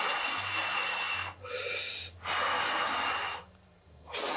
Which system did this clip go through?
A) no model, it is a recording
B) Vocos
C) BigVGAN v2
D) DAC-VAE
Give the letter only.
A